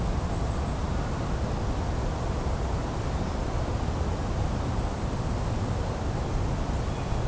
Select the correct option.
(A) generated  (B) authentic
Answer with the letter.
B